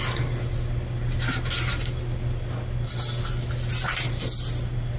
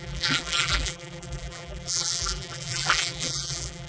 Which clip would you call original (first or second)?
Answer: first